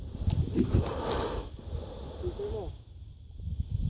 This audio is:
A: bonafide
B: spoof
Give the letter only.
A